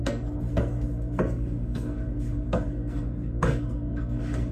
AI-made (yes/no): yes